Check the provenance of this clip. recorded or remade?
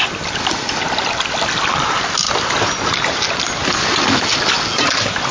recorded